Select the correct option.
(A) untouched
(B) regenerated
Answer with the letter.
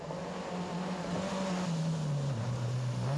A